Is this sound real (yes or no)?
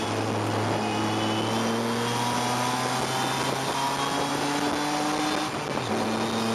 yes